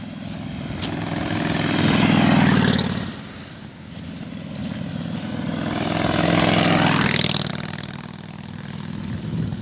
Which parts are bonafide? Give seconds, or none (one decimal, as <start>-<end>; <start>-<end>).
0.0-9.6